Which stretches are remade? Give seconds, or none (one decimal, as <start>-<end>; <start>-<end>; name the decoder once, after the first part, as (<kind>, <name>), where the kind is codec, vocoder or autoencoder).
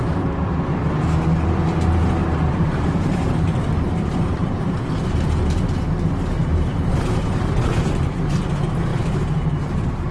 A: 2.2-4.9 (vocoder, BigVGAN v2); 6.4-7.2; 8.9-10.1